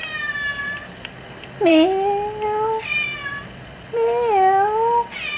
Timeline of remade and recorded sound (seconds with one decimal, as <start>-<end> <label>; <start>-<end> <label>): 0.0-5.4 recorded